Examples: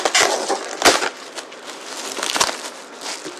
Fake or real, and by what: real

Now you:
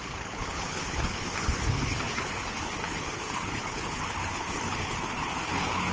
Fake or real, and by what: fake, codec, HILCodec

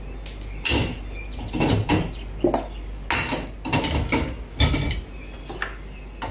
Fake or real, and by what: real